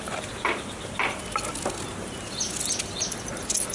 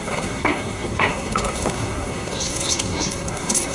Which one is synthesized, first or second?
second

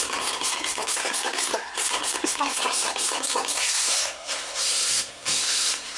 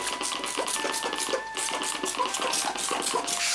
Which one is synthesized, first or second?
first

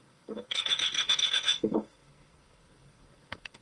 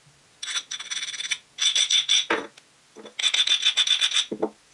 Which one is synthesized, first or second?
first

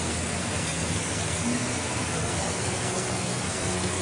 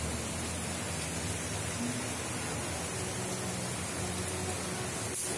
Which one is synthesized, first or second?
first